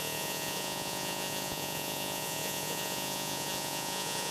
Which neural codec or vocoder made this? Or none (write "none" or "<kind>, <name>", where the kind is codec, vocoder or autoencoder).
vocoder, Vocos